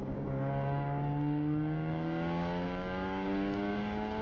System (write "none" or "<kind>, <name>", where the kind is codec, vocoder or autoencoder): codec, DAC